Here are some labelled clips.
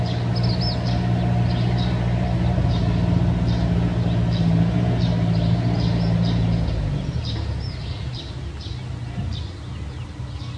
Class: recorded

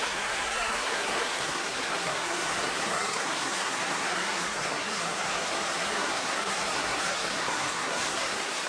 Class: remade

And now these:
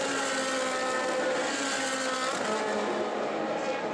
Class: recorded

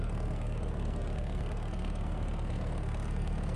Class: remade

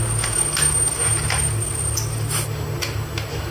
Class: recorded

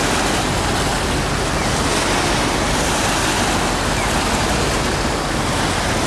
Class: recorded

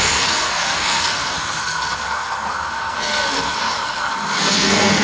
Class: remade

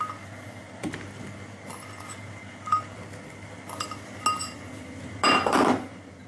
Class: recorded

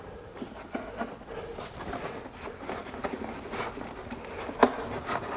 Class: recorded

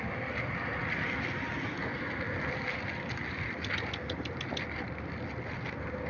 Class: recorded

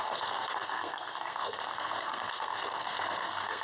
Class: remade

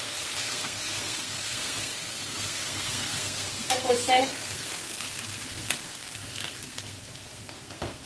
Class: remade